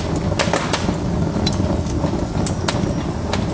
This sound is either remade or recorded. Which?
recorded